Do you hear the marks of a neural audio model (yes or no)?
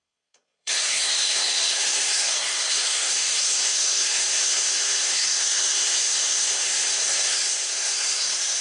yes